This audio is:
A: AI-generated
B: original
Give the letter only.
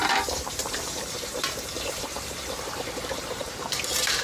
A